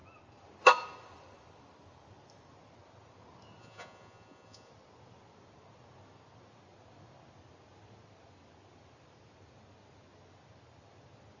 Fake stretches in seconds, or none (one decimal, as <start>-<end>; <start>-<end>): 3.6-4.7